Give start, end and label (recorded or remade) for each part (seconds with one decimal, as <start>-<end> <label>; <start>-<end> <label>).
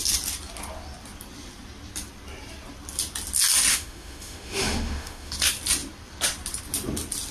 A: 0.0-3.7 recorded; 3.7-5.3 remade; 5.3-7.3 recorded